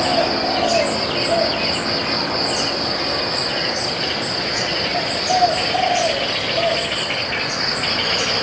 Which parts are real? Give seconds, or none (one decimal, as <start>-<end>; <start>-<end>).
0.0-8.4